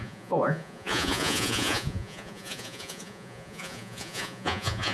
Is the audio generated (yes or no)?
yes